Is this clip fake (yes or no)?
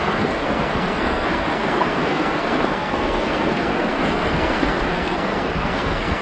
yes